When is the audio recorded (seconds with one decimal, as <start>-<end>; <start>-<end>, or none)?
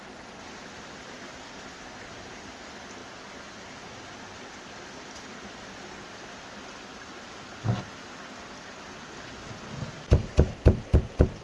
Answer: 0.0-11.4